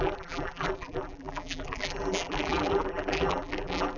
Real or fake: fake